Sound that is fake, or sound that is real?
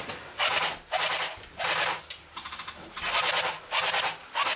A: real